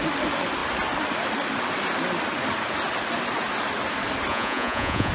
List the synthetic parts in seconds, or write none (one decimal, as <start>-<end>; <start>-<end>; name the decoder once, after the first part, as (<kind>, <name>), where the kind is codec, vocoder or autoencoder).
4.3-5.1 (vocoder, Vocos)

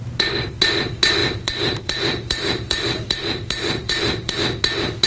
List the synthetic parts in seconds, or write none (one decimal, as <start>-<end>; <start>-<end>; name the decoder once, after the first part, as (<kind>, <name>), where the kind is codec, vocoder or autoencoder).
1.2-4.3 (vocoder, BigVGAN v2)

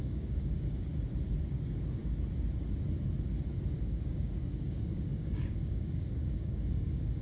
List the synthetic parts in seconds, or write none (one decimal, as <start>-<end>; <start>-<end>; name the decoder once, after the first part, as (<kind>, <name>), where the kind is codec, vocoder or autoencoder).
0.0-0.9 (codec, DAC); 1.4-2.0; 3.8-7.2

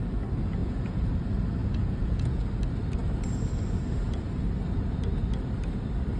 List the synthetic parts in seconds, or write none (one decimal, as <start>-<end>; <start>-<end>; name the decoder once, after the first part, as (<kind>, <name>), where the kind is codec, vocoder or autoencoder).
0.6-1.1 (vocoder, Vocos); 1.6-2.5

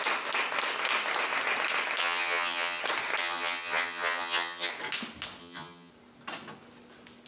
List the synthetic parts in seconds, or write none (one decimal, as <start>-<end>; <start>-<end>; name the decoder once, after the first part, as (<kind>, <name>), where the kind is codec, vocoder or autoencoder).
2.0-2.8 (vocoder, HiFi-GAN); 3.2-4.7; 5.4-5.9

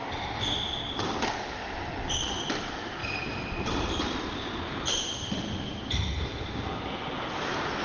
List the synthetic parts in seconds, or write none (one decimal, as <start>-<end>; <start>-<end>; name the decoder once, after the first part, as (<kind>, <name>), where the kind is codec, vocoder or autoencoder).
3.0-5.3 (vocoder, BigVGAN v2)

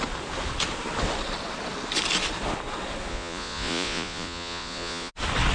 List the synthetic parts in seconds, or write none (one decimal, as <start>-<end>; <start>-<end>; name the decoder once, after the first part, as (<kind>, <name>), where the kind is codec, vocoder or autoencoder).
3.1-5.1 (vocoder, Vocos)